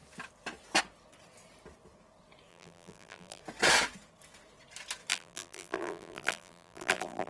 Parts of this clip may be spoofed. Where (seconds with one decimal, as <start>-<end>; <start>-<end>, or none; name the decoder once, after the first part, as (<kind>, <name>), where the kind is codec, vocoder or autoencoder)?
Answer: 2.5-3.4 (vocoder, BigVGAN v2); 5.1-7.3